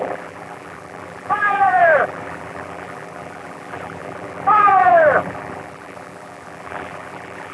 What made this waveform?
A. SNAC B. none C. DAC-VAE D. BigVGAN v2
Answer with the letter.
D